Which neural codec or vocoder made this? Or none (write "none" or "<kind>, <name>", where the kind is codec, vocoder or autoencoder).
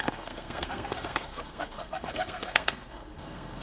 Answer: codec, SNAC